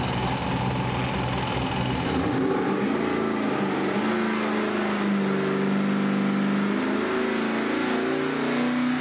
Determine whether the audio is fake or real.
real